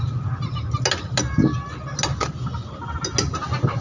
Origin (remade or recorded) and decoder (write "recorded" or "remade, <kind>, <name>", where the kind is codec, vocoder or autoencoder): recorded